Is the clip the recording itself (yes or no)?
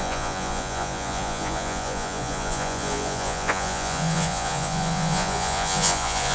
no